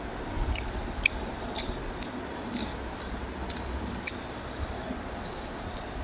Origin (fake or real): real